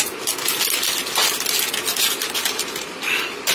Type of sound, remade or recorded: recorded